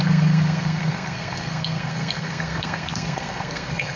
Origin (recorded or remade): remade